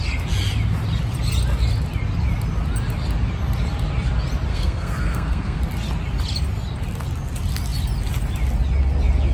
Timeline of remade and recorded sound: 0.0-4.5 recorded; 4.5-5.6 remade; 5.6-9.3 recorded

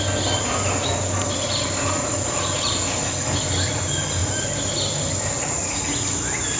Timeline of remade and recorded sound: 0.0-6.6 recorded